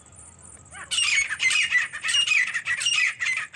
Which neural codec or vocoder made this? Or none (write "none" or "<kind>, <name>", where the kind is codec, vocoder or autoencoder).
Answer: vocoder, BigVGAN v2